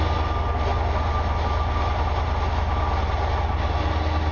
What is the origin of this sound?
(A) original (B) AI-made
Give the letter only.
A